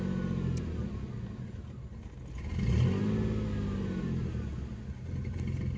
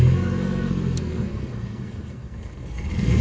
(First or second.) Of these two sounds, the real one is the first